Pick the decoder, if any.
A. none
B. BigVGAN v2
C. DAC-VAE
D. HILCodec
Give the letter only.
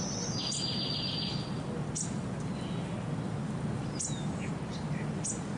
A